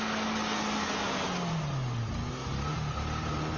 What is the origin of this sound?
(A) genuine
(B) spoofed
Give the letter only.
A